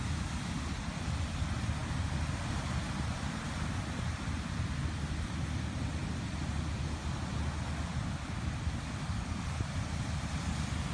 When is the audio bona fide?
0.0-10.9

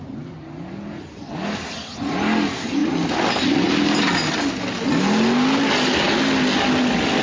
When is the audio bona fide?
0.0-7.2